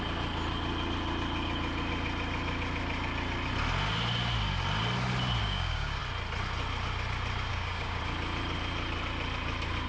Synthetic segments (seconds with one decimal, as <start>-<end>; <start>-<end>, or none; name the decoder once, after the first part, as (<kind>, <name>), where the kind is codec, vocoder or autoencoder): 5.4-6.0 (codec, DAC); 7.5-8.0